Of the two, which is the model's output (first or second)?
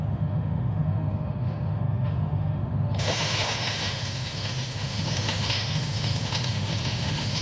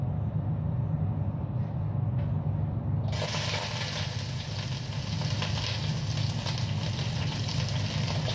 first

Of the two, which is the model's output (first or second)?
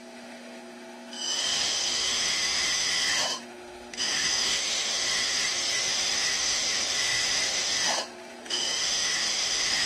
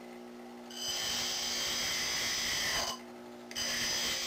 first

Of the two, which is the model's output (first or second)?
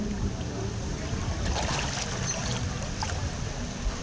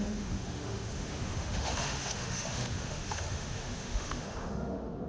second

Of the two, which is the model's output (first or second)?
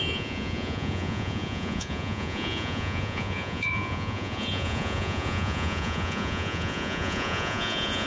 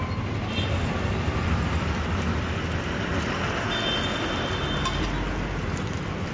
first